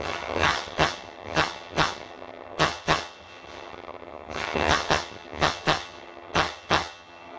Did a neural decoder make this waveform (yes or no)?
yes